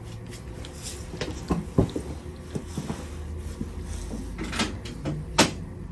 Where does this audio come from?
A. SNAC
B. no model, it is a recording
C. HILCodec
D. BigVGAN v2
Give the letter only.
B